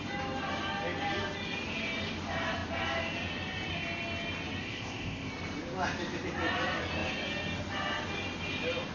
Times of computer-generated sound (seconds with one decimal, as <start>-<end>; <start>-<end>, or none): 4.6-5.3